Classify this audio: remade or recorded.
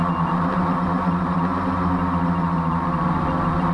recorded